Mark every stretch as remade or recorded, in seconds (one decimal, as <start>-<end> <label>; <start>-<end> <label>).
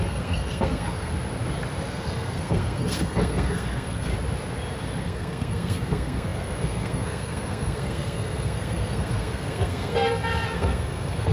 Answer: 0.0-1.1 remade; 1.1-1.9 recorded; 1.9-4.1 remade; 4.1-5.0 recorded; 5.0-11.3 remade